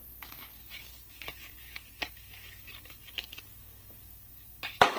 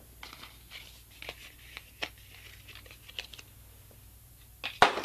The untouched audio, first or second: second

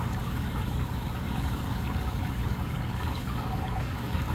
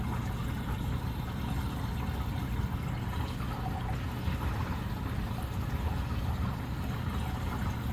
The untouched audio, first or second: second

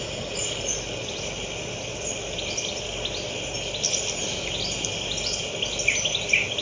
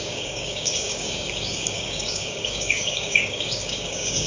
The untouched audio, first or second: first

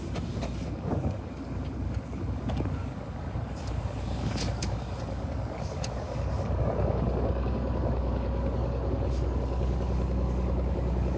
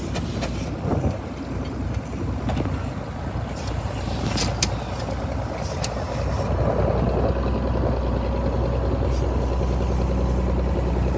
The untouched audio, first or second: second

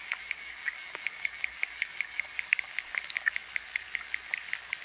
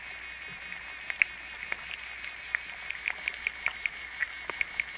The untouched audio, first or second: second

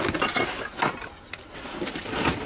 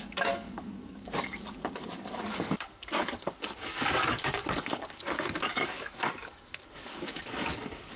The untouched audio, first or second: first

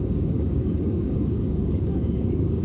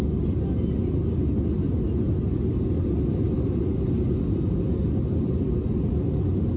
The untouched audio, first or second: second